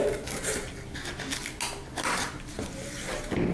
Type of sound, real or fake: real